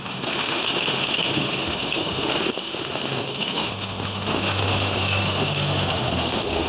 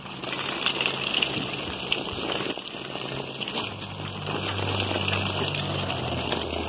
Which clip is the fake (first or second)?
first